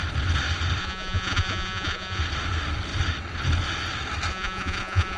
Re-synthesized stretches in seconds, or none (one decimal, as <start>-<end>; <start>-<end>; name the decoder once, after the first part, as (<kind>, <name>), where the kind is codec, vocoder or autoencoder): 0.8-2.2 (vocoder, Vocos); 4.3-5.2